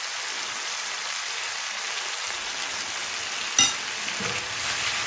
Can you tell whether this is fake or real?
real